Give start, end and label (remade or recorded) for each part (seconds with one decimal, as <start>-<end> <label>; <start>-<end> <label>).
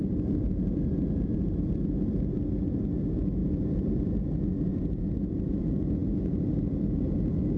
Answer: 0.0-4.7 recorded; 4.7-5.6 remade; 5.6-7.6 recorded